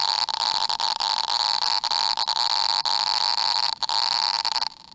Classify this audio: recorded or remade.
remade